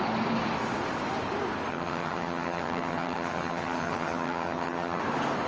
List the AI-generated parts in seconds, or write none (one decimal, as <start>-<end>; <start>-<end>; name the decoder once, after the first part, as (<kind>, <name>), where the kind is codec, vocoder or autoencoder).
1.7-5.0 (vocoder, HiFi-GAN)